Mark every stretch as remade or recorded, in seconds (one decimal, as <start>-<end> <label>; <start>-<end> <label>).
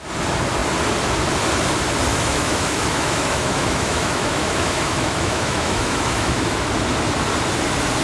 0.0-2.1 recorded; 2.1-6.7 remade; 6.7-8.0 recorded